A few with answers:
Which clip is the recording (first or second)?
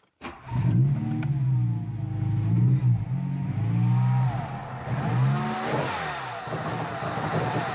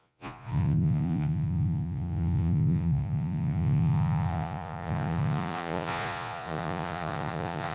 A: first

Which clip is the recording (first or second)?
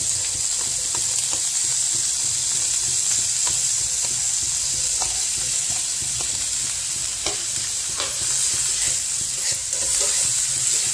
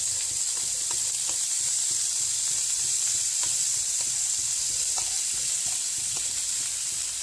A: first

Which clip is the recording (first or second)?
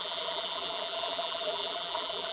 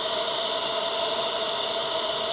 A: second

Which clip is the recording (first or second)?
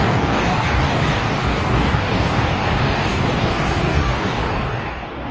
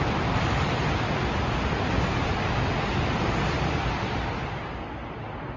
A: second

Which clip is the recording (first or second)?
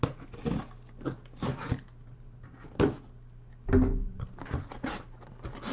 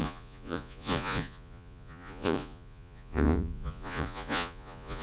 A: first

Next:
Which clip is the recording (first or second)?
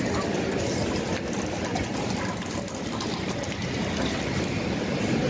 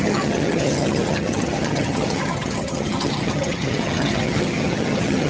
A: first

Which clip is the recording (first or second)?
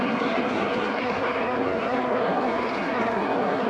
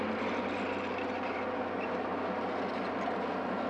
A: second